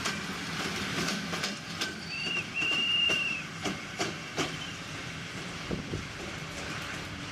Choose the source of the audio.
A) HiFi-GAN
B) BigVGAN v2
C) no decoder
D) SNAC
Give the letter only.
B